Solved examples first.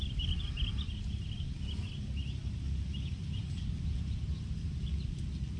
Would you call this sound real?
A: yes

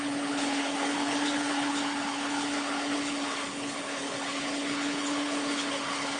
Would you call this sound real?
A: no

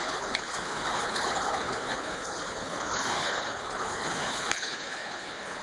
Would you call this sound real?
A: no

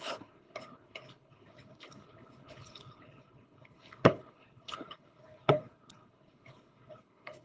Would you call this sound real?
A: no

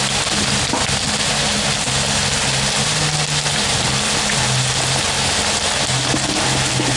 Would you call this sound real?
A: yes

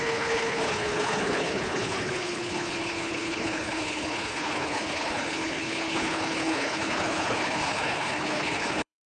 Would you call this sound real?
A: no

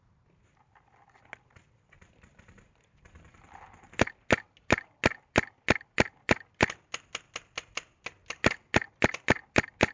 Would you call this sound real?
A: yes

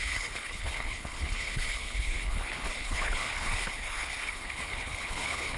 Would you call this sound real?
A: no